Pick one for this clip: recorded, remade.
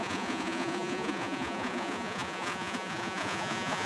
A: remade